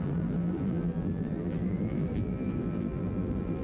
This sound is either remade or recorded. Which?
remade